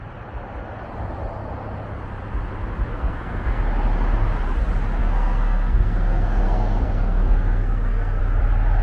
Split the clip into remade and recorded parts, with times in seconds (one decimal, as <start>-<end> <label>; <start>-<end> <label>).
0.0-2.9 recorded; 2.9-3.6 remade; 3.6-5.0 recorded; 5.0-8.2 remade; 8.2-8.8 recorded

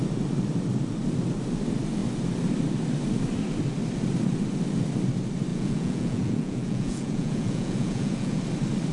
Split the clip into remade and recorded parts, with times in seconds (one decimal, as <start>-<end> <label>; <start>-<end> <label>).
0.0-5.5 recorded; 5.5-8.4 remade; 8.4-8.9 recorded

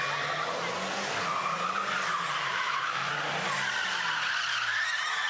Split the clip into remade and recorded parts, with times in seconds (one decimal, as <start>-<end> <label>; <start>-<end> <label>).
0.0-2.5 recorded; 2.5-3.1 remade; 3.1-5.3 recorded

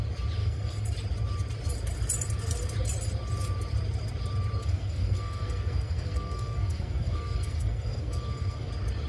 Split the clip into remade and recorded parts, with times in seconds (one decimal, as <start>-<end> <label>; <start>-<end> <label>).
0.0-0.4 recorded; 0.4-0.9 remade; 0.9-4.6 recorded; 4.6-8.7 remade; 8.7-9.1 recorded

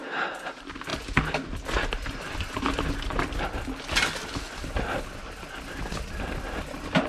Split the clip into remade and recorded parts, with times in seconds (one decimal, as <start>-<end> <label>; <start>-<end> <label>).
0.0-7.1 recorded

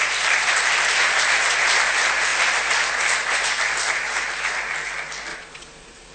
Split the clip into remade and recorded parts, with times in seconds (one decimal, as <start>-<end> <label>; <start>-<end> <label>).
0.0-5.3 recorded; 5.3-6.1 remade

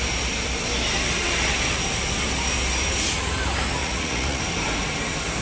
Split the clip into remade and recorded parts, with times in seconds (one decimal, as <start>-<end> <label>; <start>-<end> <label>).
0.0-3.8 recorded; 3.8-4.4 remade; 4.4-5.4 recorded

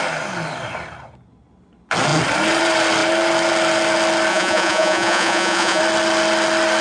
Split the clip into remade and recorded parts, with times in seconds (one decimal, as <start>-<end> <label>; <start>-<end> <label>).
0.0-4.3 recorded; 4.3-5.8 remade; 5.8-6.8 recorded